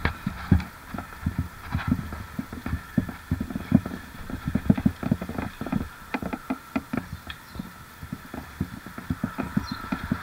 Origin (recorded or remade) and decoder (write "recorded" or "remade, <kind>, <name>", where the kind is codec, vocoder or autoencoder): recorded